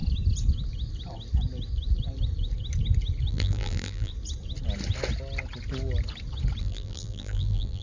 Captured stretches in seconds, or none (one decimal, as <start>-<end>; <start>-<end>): 0.0-3.3; 4.1-6.6